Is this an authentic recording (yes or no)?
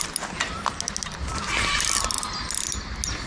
yes